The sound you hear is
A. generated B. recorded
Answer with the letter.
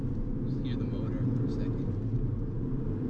B